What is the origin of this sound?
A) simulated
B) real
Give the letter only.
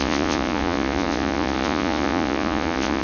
A